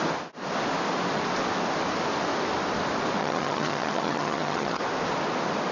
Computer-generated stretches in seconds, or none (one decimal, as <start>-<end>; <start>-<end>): 3.2-4.8